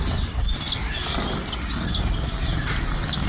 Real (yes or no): yes